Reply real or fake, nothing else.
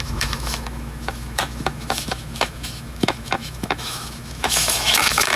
fake